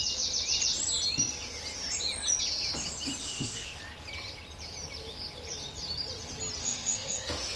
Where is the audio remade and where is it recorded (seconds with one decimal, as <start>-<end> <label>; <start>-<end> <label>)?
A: 0.0-3.2 recorded; 3.2-3.8 remade; 3.8-6.6 recorded; 6.6-7.6 remade